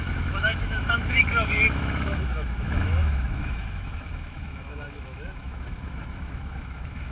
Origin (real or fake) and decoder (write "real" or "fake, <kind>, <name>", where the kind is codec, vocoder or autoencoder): fake, autoencoder, DAC-VAE